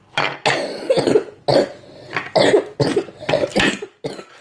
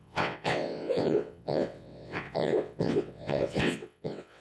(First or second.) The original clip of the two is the first